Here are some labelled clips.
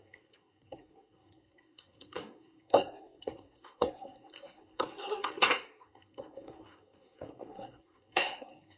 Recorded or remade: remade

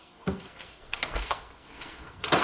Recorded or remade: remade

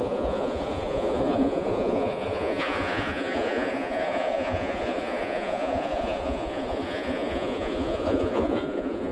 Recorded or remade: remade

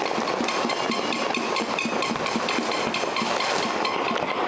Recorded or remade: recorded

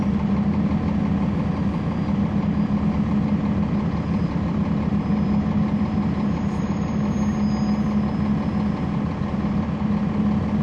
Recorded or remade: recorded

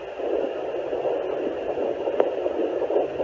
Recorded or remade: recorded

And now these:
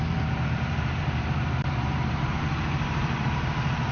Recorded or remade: remade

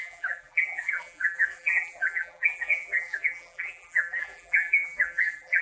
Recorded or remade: remade